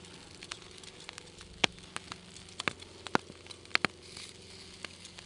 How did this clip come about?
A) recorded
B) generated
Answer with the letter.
A